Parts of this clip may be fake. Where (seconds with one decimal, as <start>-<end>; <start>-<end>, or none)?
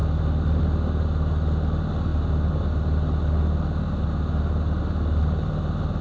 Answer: none